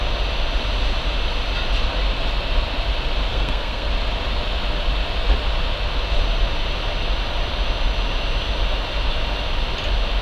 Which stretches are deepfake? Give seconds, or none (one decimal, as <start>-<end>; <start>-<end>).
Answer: 3.3-3.9